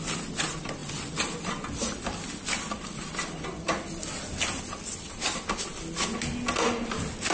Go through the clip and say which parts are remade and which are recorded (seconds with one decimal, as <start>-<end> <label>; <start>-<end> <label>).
0.0-5.7 remade; 5.7-7.3 recorded